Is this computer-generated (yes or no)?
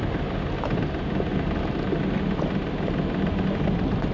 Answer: no